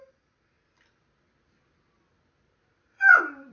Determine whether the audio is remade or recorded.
recorded